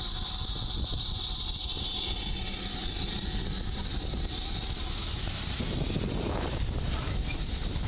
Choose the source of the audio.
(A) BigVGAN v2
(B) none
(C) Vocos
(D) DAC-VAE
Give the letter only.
B